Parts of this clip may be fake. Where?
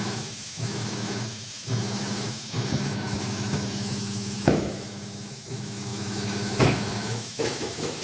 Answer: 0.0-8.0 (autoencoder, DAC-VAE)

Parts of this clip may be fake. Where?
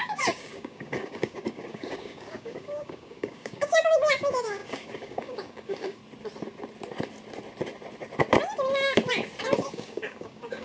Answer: 0.0-6.0 (codec, DAC); 9.4-10.6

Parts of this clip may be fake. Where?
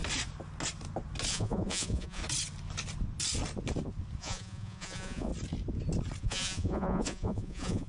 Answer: 1.3-2.2 (vocoder, Vocos); 4.2-5.3; 6.2-7.9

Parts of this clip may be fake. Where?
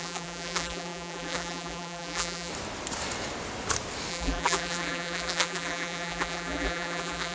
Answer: 0.0-2.5 (vocoder, BigVGAN v2); 4.1-7.3